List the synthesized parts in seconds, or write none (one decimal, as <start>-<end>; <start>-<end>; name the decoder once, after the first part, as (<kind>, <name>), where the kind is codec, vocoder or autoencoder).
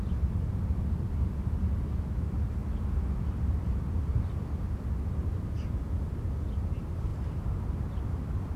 7.1-8.6 (vocoder, BigVGAN v2)